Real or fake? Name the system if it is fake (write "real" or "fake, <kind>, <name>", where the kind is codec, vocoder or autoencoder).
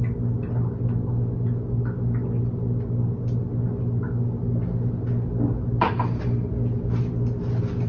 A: real